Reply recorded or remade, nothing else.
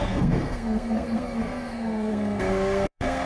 remade